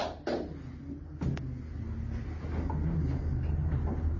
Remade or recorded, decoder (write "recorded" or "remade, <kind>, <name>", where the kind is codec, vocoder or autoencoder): recorded